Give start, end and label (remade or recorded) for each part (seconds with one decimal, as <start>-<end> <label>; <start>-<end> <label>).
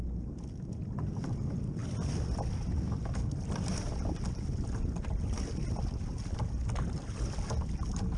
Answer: 0.0-8.2 recorded